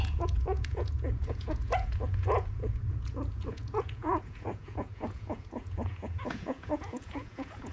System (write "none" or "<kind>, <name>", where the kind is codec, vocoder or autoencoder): vocoder, Vocos